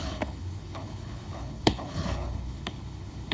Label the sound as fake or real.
fake